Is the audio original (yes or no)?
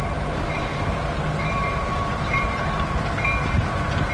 no